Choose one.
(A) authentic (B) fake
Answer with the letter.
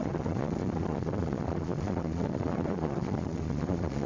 B